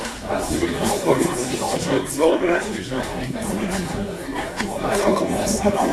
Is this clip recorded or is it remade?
remade